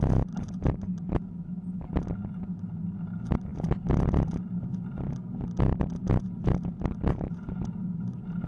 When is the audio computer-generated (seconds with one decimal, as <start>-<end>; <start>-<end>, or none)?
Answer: none